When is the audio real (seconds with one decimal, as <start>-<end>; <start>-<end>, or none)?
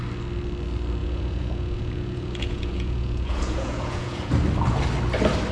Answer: 0.0-1.0; 4.3-5.5